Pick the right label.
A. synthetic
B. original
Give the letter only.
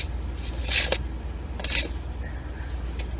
B